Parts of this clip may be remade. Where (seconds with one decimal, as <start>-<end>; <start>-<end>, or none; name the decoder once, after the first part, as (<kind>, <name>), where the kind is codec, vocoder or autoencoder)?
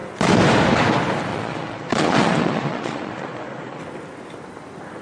1.3-3.8 (vocoder, Vocos)